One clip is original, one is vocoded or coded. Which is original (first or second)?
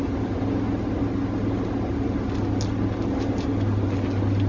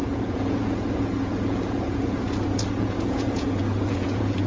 first